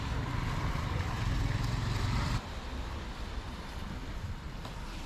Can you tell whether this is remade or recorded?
remade